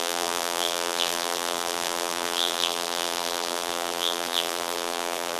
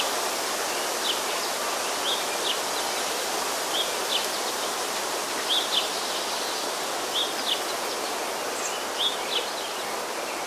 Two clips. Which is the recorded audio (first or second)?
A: second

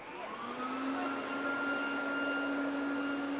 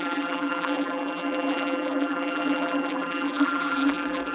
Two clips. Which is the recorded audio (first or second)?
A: first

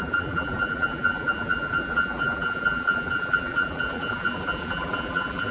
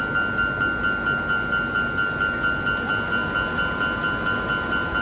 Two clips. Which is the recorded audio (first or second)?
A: second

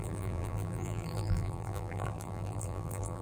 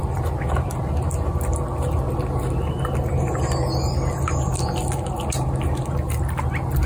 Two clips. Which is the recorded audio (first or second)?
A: second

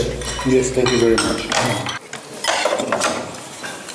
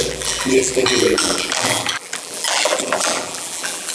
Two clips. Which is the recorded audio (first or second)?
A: first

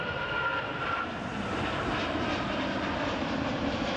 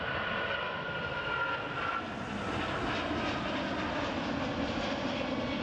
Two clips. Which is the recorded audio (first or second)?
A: second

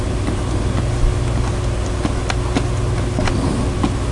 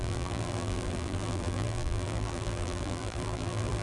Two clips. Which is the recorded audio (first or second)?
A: first